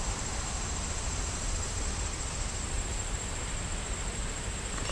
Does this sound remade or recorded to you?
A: recorded